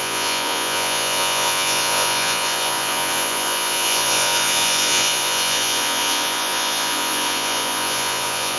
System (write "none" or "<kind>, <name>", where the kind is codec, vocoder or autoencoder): vocoder, Vocos